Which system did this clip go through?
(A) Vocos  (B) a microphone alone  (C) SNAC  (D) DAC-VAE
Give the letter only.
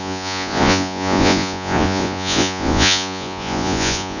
A